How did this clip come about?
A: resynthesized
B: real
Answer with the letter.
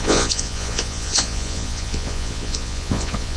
A